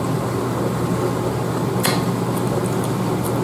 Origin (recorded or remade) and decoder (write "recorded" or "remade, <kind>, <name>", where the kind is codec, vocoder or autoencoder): recorded